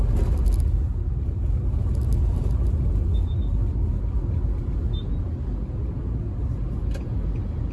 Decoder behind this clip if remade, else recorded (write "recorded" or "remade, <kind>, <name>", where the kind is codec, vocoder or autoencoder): recorded